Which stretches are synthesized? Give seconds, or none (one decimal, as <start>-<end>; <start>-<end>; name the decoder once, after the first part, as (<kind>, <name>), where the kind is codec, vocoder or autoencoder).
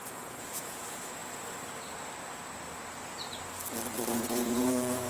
0.0-1.2 (vocoder, Vocos); 4.1-5.1